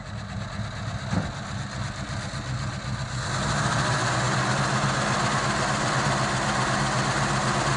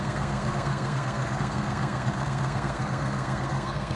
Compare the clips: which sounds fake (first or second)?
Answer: second